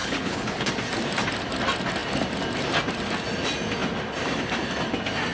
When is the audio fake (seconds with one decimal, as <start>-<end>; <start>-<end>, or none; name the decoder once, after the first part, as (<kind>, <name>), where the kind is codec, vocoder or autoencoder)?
0.0-0.7 (codec, HILCodec)